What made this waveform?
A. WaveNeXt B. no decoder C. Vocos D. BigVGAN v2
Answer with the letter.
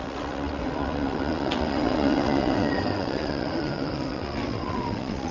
A